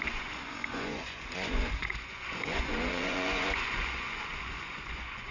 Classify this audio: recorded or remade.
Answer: remade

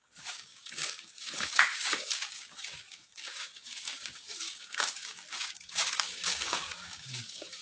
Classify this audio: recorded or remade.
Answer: remade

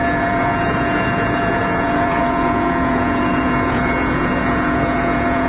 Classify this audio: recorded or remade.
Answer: remade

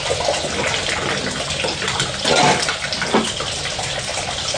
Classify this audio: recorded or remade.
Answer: recorded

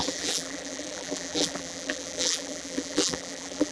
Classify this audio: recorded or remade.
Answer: remade